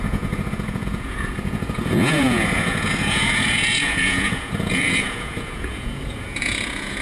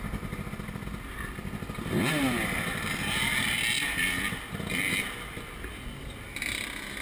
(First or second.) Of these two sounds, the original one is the second